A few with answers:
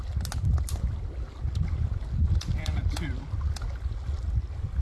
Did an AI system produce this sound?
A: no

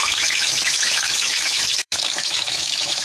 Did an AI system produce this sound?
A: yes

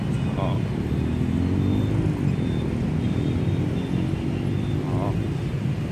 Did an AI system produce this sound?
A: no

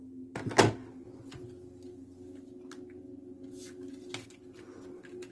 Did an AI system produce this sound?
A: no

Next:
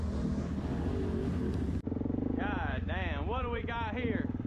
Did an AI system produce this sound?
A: no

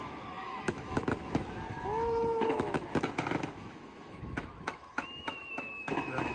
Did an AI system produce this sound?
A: yes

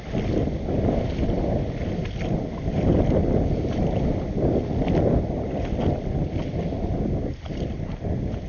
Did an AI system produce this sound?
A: no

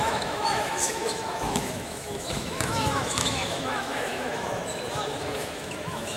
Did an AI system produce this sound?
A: yes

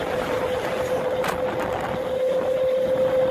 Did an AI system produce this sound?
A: no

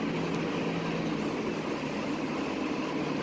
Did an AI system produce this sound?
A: no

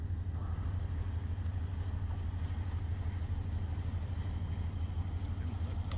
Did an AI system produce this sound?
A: no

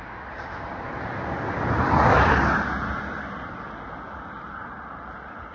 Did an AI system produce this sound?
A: no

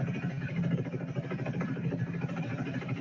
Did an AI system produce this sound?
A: no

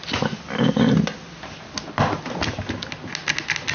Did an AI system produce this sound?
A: no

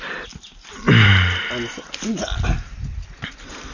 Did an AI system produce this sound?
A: no